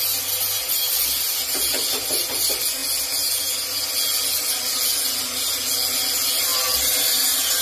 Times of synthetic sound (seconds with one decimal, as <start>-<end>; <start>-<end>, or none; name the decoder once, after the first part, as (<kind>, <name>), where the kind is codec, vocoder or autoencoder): none